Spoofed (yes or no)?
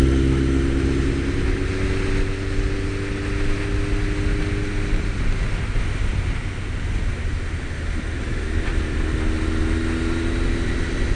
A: no